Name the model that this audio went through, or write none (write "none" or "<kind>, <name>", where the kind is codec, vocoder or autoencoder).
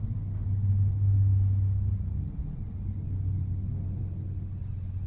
none